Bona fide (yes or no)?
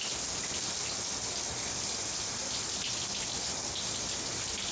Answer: yes